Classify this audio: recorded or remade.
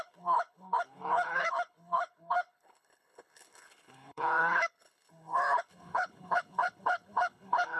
remade